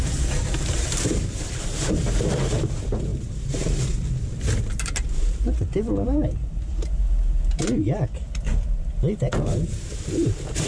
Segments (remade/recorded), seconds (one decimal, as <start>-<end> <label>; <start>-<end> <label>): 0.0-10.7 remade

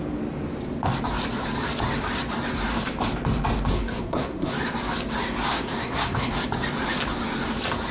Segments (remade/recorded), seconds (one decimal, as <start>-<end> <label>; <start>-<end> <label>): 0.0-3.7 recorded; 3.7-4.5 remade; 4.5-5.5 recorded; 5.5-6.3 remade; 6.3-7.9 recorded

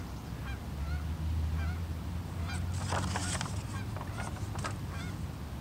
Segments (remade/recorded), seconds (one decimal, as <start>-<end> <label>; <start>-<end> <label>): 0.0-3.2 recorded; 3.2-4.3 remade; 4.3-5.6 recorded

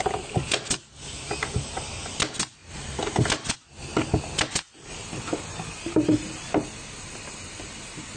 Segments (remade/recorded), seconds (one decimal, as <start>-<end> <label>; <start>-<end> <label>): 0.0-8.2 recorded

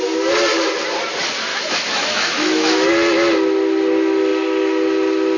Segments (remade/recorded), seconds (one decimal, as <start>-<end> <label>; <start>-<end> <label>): 0.0-1.5 recorded; 1.5-2.9 remade; 2.9-5.4 recorded

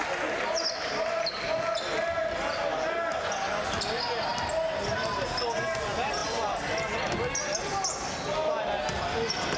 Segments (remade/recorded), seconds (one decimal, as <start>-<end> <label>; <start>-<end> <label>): 0.0-9.6 recorded